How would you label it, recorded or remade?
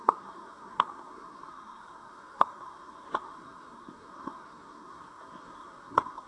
remade